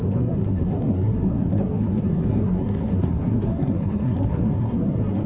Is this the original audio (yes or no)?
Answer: no